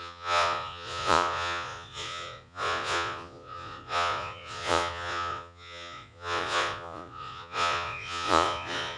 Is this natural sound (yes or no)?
no